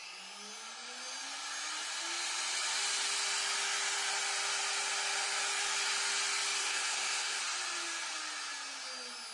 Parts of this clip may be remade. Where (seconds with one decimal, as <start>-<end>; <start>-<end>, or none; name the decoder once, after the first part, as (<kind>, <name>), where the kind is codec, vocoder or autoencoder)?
6.6-7.4 (codec, SNAC)